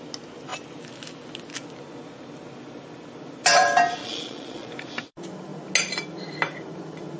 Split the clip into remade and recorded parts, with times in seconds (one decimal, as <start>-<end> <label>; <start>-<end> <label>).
0.0-4.0 recorded; 4.0-4.7 remade; 4.7-7.2 recorded